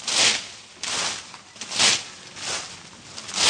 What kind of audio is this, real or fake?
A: real